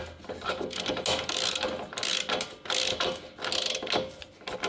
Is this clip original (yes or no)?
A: yes